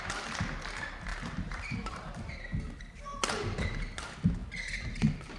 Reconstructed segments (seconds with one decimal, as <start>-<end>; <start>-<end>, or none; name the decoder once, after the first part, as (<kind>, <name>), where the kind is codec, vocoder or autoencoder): 1.1-2.3 (vocoder, BigVGAN v2)